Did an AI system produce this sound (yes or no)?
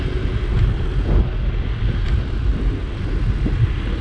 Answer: no